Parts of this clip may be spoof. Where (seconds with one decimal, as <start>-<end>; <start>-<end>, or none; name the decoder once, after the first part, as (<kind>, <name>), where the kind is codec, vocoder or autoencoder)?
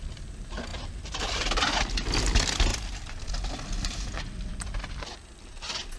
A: 0.7-1.7 (vocoder, BigVGAN v2); 2.7-3.2